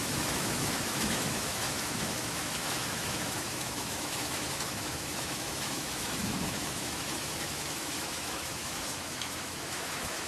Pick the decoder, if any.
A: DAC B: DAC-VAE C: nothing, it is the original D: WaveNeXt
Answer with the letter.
B